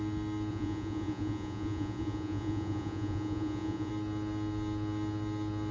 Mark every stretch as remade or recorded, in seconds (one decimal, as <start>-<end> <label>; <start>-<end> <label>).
0.0-0.5 recorded; 0.5-3.9 remade; 3.9-5.7 recorded